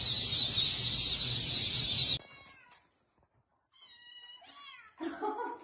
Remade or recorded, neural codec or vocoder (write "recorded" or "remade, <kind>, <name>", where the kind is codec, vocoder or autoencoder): recorded